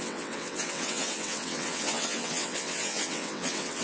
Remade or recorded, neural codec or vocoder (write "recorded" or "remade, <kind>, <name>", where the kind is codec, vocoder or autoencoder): remade, vocoder, WaveNeXt